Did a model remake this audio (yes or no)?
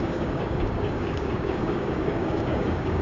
yes